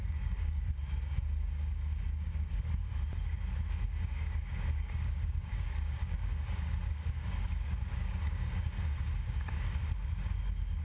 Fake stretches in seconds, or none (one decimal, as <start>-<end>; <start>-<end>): 0.0-2.8; 3.7-10.8